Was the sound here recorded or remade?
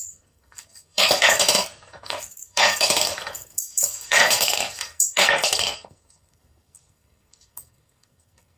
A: remade